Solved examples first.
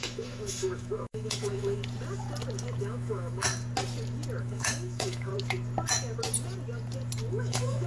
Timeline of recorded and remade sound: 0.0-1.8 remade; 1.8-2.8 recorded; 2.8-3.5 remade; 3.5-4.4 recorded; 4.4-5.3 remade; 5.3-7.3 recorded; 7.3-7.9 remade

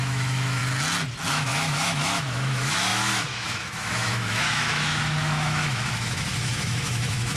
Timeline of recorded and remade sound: 0.0-0.6 remade; 0.6-1.3 recorded; 1.3-7.4 remade

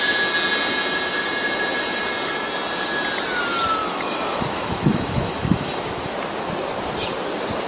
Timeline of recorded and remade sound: 0.0-3.8 recorded; 3.8-6.1 remade; 6.1-7.7 recorded

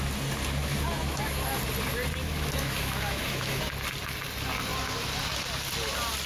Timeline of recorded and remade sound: 0.0-0.6 recorded; 0.6-1.6 remade; 1.6-2.2 recorded; 2.2-3.6 remade; 3.6-6.3 recorded

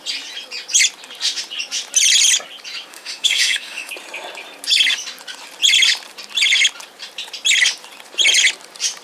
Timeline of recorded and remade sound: 0.0-2.9 recorded; 2.9-3.9 remade; 3.9-9.0 recorded